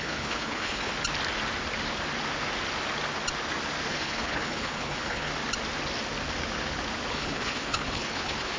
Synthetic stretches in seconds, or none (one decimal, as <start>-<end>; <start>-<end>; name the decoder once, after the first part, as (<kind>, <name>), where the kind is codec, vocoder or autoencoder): 0.0-0.9 (codec, HILCodec); 3.9-5.3; 7.1-8.6